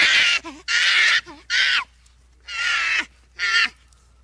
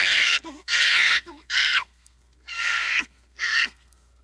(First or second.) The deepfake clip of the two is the second